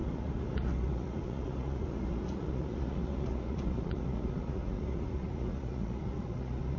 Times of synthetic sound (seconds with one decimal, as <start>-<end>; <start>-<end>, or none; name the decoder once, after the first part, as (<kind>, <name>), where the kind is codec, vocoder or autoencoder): 0.0-6.8 (vocoder, Vocos)